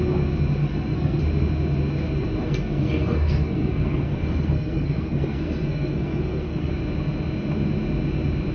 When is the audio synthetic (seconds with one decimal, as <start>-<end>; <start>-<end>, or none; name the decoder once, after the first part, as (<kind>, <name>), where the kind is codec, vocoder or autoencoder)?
0.6-1.2 (codec, SNAC); 2.4-6.7